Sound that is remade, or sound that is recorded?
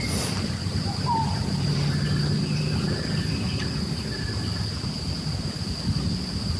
recorded